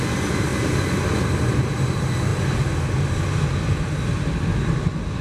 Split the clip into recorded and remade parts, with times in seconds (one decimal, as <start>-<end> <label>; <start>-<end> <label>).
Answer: 0.0-5.2 recorded